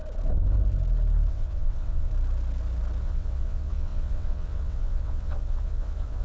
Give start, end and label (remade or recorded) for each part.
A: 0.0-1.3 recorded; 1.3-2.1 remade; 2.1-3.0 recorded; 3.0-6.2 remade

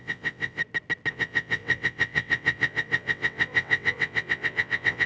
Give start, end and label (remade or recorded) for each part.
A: 0.0-0.6 remade; 0.6-1.1 recorded; 1.1-5.1 remade

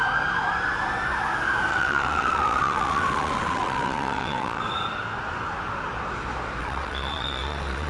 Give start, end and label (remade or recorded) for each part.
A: 0.0-1.7 recorded; 1.7-4.6 remade; 4.6-6.6 recorded; 6.6-7.9 remade

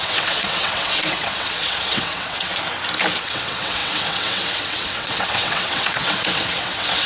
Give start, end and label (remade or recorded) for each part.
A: 0.0-2.5 remade; 2.5-3.2 recorded; 3.2-7.1 remade